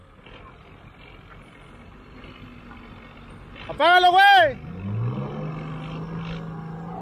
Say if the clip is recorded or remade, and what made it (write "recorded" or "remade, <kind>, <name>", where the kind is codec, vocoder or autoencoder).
recorded